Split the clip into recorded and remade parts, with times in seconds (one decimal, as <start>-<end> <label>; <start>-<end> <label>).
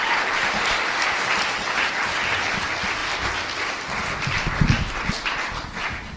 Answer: 0.0-6.2 remade